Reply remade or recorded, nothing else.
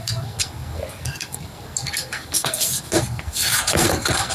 remade